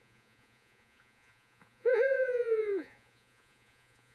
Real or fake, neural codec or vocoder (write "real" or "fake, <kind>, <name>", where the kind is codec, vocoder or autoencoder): fake, vocoder, Vocos